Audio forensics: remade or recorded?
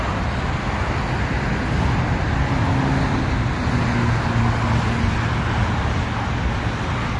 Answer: recorded